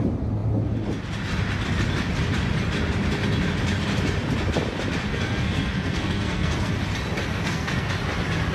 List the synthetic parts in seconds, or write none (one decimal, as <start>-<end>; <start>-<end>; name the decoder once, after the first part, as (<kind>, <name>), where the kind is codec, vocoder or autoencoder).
5.1-6.7 (codec, SNAC); 7.3-7.9